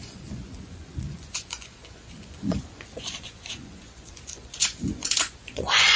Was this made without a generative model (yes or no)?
no